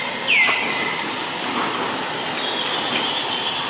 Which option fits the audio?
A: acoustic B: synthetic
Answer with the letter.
A